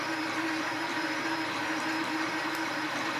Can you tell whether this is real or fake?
fake